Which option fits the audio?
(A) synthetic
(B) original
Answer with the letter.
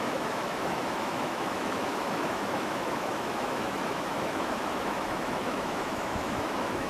A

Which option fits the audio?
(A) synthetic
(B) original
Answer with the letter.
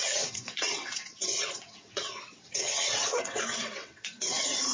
A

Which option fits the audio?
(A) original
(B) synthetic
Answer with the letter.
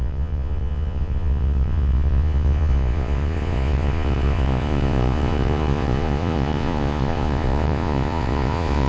B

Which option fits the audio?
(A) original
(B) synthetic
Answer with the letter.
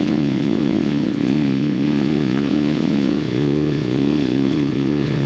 B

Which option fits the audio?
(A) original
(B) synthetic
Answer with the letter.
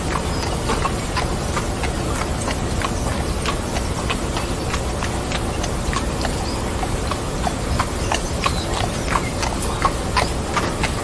A